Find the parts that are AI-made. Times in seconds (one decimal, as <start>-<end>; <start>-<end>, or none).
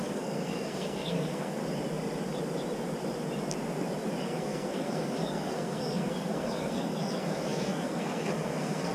0.0-1.6; 4.2-8.9